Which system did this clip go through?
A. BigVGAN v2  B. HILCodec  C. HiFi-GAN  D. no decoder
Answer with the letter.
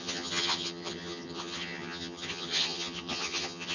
C